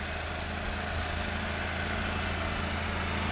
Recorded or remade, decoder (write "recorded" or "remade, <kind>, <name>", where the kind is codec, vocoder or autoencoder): recorded